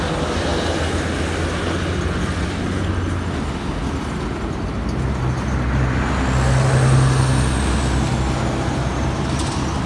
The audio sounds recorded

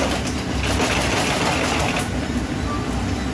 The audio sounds recorded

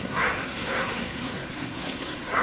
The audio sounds remade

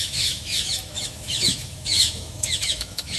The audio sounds remade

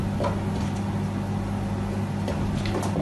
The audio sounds recorded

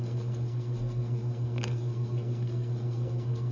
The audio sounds remade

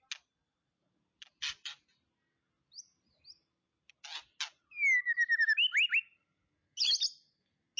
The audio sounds recorded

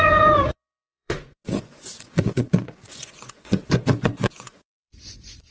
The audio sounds remade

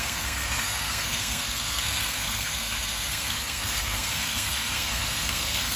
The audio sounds remade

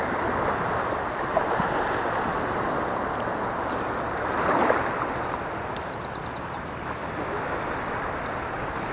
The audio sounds recorded